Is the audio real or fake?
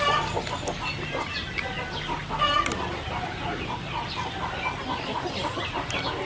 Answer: real